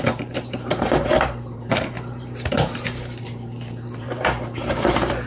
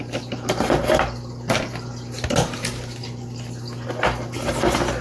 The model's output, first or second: first